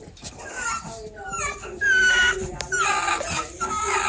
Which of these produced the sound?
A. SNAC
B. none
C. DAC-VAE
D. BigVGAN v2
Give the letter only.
B